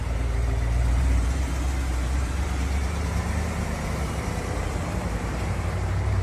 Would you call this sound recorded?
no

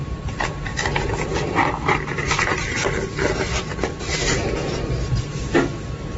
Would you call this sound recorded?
yes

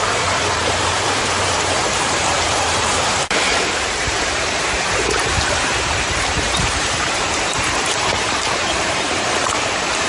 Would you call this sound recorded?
no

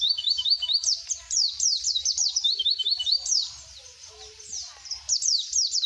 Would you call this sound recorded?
no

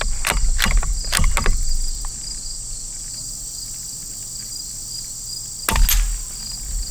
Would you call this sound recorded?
yes